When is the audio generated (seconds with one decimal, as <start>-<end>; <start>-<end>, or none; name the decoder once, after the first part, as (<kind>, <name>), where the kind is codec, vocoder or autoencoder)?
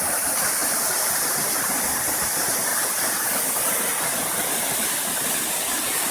0.0-6.1 (vocoder, BigVGAN v2)